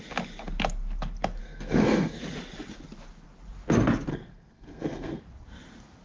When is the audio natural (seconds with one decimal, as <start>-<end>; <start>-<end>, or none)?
0.0-1.4; 2.2-4.1; 5.2-6.0